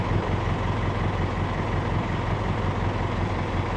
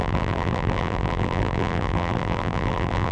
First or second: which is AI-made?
second